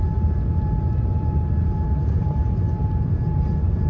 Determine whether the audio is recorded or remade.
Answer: remade